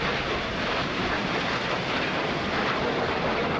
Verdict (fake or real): real